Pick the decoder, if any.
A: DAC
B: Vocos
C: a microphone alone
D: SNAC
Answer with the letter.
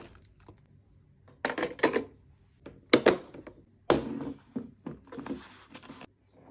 C